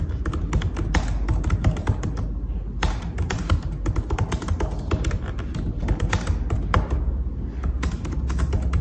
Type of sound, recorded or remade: recorded